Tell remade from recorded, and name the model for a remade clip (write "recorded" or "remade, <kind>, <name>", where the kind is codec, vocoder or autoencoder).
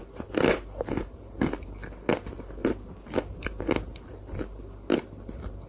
recorded